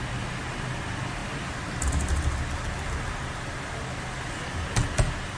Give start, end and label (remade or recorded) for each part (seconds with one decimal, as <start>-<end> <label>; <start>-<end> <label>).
0.0-5.4 recorded